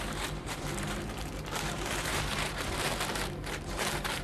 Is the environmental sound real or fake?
fake